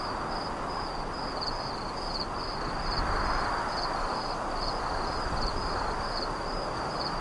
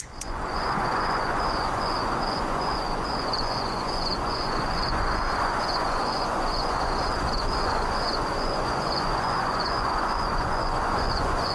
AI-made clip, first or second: second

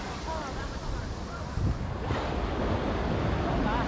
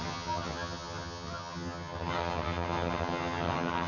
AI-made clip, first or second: second